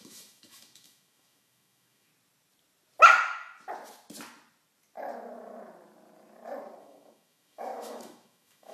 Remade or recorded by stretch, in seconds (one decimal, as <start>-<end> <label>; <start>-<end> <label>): 0.0-2.1 remade; 2.1-6.8 recorded; 6.8-8.7 remade